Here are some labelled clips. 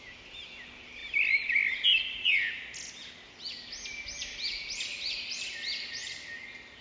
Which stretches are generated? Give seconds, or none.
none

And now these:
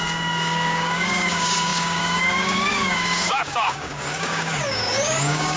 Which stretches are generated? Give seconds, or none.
0.0-5.6 (codec, DAC)

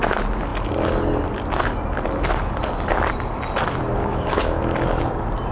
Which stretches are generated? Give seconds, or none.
4.0-4.6 (codec, DAC)

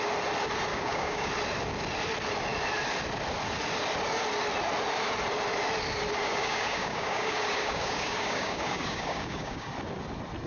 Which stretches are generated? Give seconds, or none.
0.7-1.3 (codec, DAC); 6.2-9.7

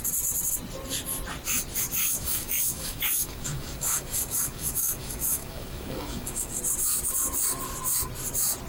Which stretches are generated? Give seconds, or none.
2.0-6.6 (codec, DAC)

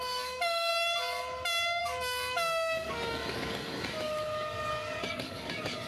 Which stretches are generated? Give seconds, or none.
0.0-0.7 (codec, DAC); 1.8-5.9

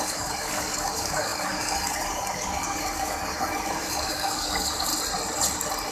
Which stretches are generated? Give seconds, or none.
0.0-4.9 (codec, DAC)

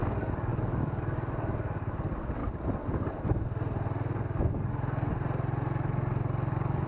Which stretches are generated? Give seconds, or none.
0.0-2.4 (codec, DAC); 6.5-6.9